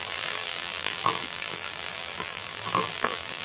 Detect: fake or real fake